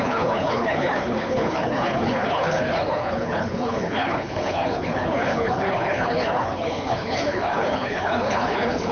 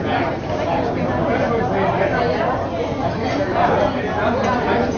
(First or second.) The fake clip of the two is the first